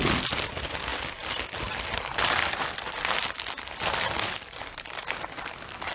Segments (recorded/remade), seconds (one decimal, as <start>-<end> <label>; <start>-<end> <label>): 0.0-5.9 recorded

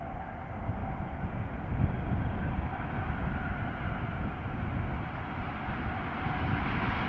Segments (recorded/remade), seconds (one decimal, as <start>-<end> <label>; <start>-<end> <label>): 0.0-7.1 recorded

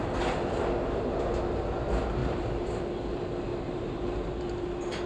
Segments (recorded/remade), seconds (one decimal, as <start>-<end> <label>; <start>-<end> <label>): 0.0-2.2 recorded; 2.2-2.8 remade; 2.8-3.5 recorded; 3.5-4.3 remade; 4.3-5.1 recorded

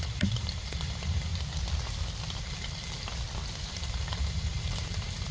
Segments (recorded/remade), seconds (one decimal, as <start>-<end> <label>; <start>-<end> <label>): 0.0-1.3 remade; 1.3-2.4 recorded; 2.4-3.1 remade; 3.1-3.7 recorded; 3.7-5.3 remade